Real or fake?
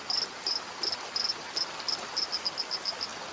real